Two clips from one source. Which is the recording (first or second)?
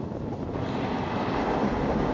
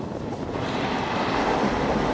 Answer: first